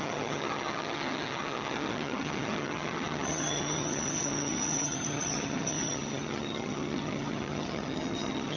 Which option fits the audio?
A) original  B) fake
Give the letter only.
B